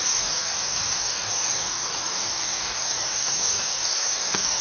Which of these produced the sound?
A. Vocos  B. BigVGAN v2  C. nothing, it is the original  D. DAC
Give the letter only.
D